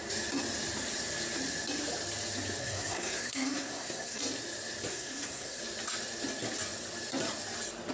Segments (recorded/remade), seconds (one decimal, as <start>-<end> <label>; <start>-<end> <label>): 0.0-2.6 recorded; 2.6-4.2 remade; 4.2-4.9 recorded; 4.9-5.6 remade; 5.6-7.9 recorded